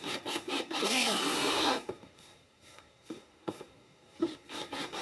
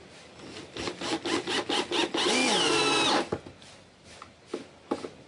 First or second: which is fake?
first